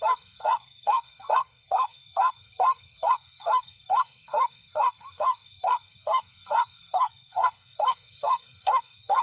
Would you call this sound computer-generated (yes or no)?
yes